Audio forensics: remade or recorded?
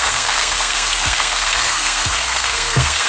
remade